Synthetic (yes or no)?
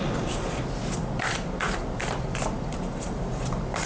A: yes